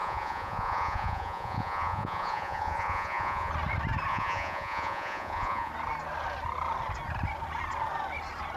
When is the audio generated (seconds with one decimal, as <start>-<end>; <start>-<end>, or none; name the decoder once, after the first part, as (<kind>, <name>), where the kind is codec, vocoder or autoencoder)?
0.0-3.5 (vocoder, Vocos); 4.1-5.7